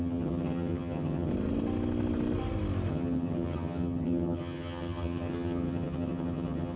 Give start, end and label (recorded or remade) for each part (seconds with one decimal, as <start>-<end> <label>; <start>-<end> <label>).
0.0-1.3 remade; 1.3-2.9 recorded; 2.9-6.8 remade